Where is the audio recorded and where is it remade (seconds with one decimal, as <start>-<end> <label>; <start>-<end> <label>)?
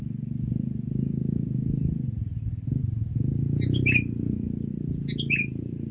0.0-5.9 recorded